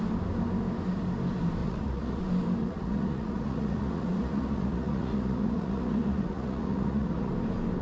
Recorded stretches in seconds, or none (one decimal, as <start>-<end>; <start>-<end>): 0.0-1.6; 2.2-2.6; 7.3-7.8